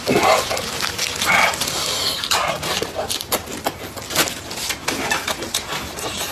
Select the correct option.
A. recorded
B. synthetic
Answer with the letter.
A